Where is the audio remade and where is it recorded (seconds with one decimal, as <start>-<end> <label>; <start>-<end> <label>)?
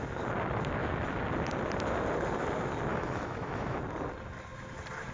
0.0-2.9 recorded; 2.9-3.8 remade; 3.8-5.1 recorded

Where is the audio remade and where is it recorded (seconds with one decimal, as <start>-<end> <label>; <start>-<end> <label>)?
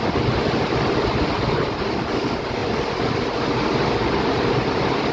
0.0-2.6 recorded; 2.6-5.1 remade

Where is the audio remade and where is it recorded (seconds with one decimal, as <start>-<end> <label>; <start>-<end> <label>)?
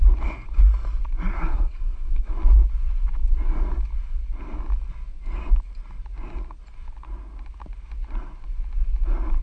0.0-1.3 recorded; 1.3-2.3 remade; 2.3-9.4 recorded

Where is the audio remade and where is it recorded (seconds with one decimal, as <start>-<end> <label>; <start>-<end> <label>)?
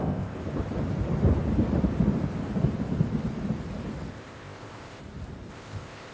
0.0-0.4 remade; 0.4-4.1 recorded; 4.1-5.0 remade; 5.0-5.5 recorded; 5.5-6.1 remade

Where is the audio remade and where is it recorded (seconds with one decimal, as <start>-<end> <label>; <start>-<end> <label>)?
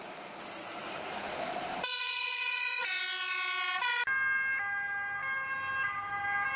0.0-2.0 recorded; 2.0-3.0 remade; 3.0-6.6 recorded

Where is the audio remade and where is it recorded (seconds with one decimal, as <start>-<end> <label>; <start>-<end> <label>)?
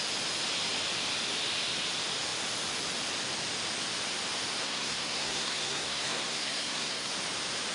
0.0-4.6 recorded; 4.6-7.1 remade; 7.1-7.7 recorded